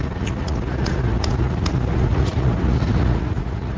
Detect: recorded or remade remade